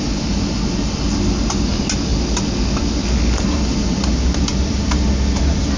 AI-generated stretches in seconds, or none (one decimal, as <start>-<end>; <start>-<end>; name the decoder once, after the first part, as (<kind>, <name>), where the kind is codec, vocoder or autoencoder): none